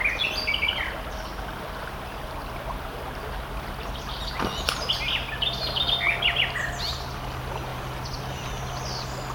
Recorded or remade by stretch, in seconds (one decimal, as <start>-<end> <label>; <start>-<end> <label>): 0.0-7.7 recorded; 7.7-8.5 remade; 8.5-9.3 recorded